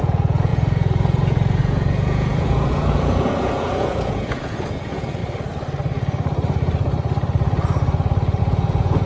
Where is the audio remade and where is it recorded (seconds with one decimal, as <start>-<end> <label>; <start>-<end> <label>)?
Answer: 0.0-5.2 remade; 5.2-8.4 recorded; 8.4-9.1 remade